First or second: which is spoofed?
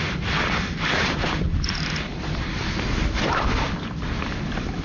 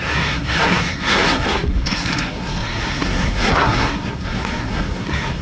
second